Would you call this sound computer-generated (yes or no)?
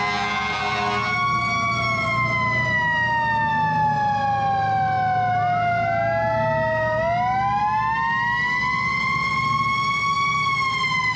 no